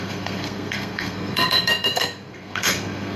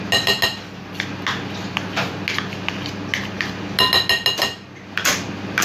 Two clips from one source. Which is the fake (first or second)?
first